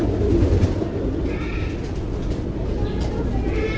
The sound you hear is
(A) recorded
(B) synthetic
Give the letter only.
A